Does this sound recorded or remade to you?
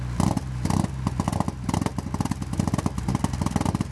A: recorded